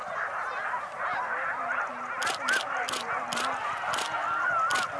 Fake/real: real